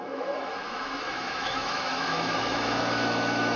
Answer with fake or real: fake